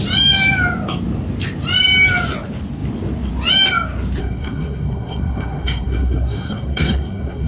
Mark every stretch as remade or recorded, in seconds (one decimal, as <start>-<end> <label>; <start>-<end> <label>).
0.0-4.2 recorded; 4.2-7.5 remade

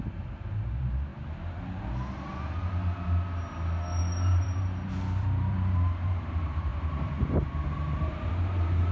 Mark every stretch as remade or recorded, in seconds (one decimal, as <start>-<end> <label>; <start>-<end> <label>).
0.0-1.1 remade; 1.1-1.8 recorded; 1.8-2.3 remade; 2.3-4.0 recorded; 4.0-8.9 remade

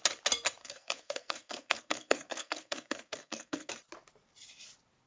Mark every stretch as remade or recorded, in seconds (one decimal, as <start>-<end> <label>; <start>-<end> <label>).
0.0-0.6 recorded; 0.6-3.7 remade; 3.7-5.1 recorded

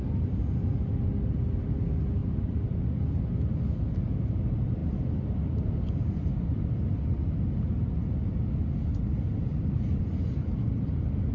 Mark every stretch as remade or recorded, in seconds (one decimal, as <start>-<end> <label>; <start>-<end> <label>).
0.0-2.2 recorded; 2.2-3.0 remade; 3.0-4.8 recorded; 4.8-6.7 remade; 6.7-9.4 recorded; 9.4-10.0 remade; 10.0-11.3 recorded

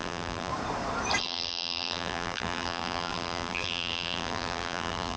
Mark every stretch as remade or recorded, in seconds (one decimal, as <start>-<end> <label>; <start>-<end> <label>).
0.0-0.5 remade; 0.5-1.2 recorded; 1.2-5.2 remade

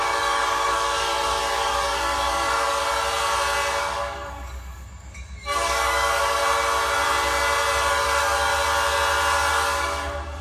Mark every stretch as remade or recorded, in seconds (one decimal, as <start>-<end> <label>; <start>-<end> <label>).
0.0-2.8 remade; 2.8-3.8 recorded; 3.8-6.4 remade; 6.4-7.9 recorded; 7.9-8.5 remade; 8.5-9.5 recorded; 9.5-10.4 remade

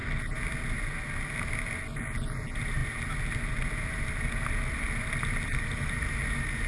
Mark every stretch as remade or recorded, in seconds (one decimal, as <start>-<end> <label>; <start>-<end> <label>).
0.0-6.7 recorded